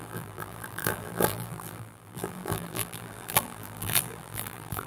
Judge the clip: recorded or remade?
remade